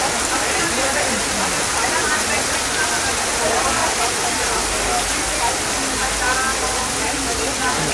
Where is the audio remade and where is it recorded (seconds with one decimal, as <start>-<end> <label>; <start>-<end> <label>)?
0.0-7.9 recorded